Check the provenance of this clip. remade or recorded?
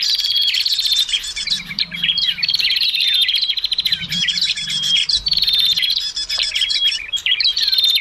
remade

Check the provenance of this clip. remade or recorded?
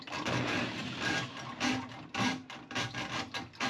recorded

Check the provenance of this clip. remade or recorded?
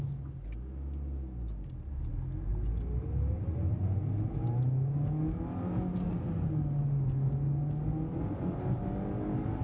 recorded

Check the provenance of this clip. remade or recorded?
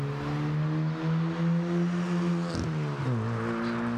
recorded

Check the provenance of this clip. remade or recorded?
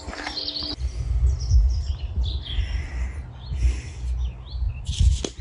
recorded